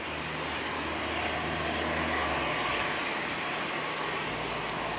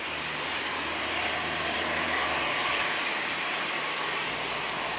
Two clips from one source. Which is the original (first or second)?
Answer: first